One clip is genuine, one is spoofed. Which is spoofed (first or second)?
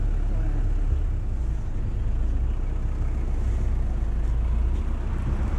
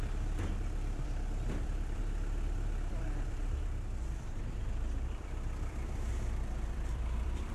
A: second